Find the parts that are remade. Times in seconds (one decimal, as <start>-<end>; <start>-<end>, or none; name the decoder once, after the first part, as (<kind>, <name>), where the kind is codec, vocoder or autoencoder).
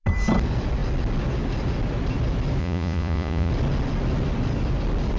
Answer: 2.6-3.5 (vocoder, Vocos)